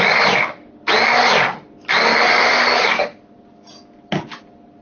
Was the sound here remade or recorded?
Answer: recorded